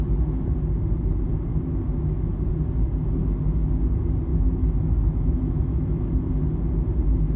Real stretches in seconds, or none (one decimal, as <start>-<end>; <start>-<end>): 0.0-1.5; 2.5-3.2; 3.7-4.3; 6.3-7.4

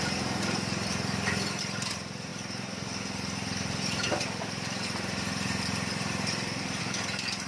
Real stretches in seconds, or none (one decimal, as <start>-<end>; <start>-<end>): 0.0-7.5

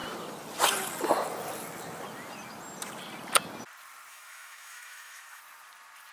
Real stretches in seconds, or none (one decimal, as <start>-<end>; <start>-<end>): 0.0-4.1; 5.4-6.1

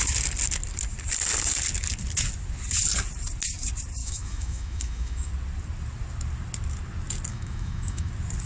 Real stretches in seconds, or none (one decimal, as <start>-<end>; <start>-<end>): 0.0-4.0; 5.3-7.3; 8.1-8.5

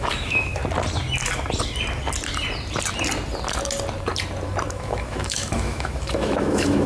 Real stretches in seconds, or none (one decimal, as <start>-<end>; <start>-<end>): 0.6-4.7